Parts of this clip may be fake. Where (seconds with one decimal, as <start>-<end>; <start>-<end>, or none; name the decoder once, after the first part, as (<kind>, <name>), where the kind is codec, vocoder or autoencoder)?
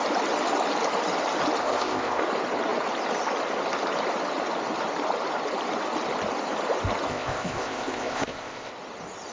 1.6-2.2 (codec, ZipCodec); 7.1-8.7